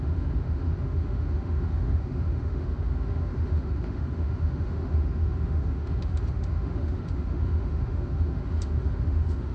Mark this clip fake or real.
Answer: fake